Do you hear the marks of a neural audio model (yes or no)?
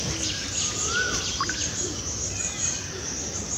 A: no